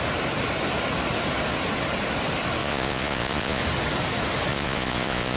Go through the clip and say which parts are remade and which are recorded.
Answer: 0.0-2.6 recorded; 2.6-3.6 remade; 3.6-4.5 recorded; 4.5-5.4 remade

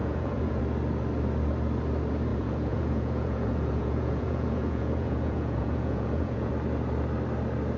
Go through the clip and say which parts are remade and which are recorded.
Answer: 0.0-0.6 remade; 0.6-2.3 recorded; 2.3-6.5 remade; 6.5-7.8 recorded